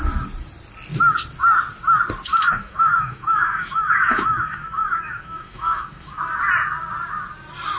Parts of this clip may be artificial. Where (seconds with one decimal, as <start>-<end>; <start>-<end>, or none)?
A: 2.3-6.2